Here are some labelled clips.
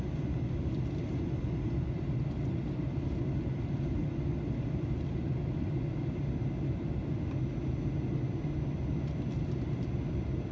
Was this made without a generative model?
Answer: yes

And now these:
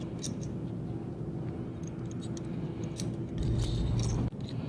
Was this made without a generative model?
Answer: yes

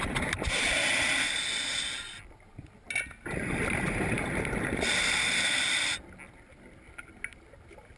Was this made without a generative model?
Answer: yes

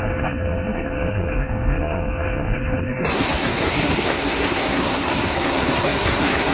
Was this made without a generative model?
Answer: no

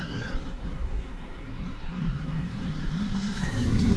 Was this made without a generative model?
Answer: no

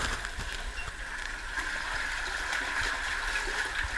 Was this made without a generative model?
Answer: yes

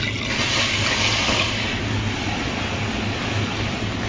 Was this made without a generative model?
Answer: yes